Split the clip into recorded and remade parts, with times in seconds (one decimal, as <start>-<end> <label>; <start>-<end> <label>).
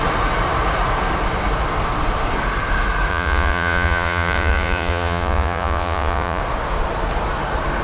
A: 0.0-3.1 recorded; 3.1-6.4 remade; 6.4-7.8 recorded